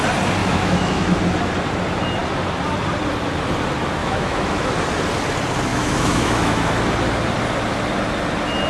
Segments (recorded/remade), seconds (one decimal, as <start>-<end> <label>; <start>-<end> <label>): 0.0-0.4 recorded; 0.4-1.2 remade; 1.2-4.0 recorded; 4.0-4.7 remade; 4.7-5.7 recorded; 5.7-6.7 remade; 6.7-8.7 recorded